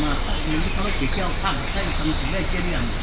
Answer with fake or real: real